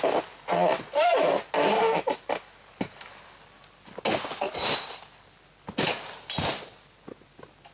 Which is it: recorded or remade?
recorded